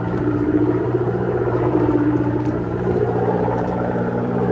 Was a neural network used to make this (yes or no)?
yes